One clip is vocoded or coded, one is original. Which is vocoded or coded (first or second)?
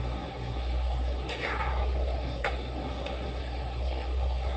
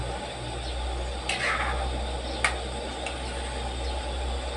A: first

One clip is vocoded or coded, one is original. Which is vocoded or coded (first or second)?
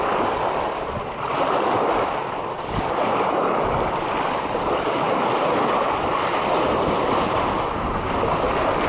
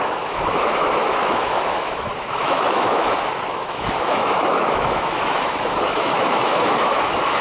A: second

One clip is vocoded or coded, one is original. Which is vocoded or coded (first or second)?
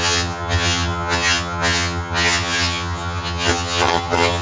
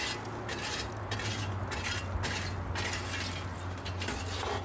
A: first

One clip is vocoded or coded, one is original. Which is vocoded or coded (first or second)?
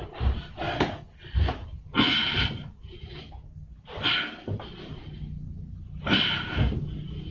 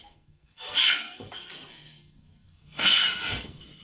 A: second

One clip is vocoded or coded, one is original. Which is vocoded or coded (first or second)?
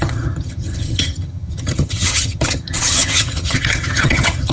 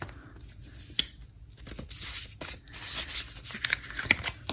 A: first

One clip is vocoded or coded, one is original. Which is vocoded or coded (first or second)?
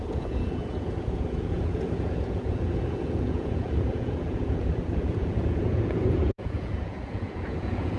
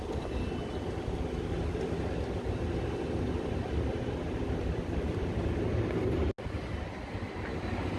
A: first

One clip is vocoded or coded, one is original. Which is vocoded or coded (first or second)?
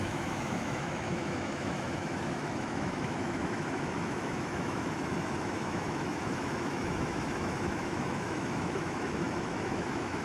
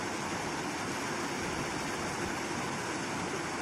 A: first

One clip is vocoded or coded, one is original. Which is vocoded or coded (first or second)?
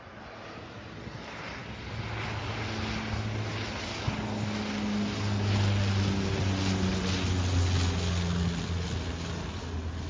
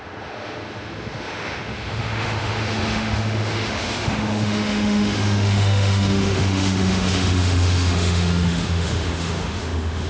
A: second